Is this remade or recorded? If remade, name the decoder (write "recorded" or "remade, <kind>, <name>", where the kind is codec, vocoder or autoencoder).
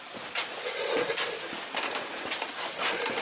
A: recorded